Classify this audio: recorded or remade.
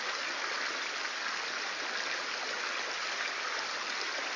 recorded